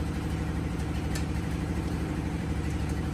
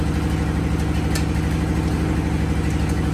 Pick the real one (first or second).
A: second